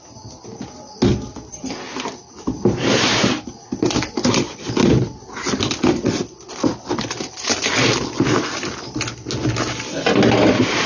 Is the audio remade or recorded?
recorded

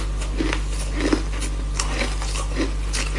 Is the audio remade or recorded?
recorded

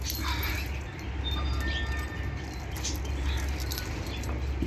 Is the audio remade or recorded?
recorded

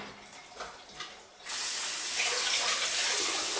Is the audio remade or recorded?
recorded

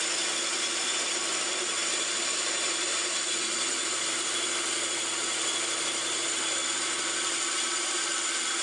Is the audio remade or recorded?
remade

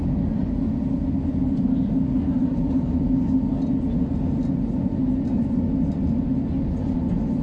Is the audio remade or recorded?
recorded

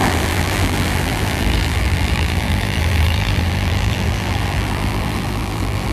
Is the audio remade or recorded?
remade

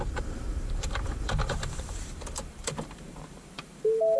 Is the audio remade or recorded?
remade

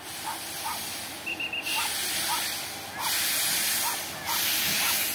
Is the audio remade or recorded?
recorded